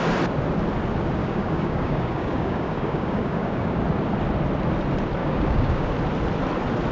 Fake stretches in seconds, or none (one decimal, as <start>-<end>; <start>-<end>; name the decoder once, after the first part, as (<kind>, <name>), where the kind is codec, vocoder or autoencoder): 1.2-3.8 (codec, DAC); 5.2-5.9